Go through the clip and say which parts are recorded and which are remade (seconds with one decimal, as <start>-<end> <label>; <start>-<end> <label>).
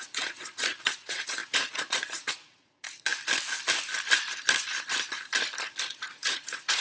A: 0.0-3.1 remade; 3.1-5.8 recorded; 5.8-6.8 remade